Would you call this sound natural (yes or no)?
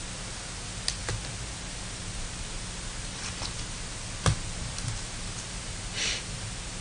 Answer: yes